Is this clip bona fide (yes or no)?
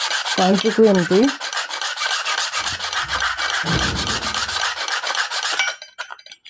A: no